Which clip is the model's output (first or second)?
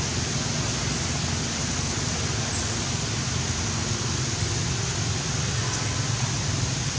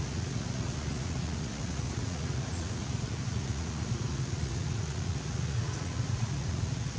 second